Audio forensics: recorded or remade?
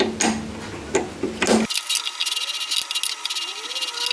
recorded